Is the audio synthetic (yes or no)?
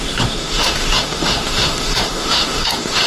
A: yes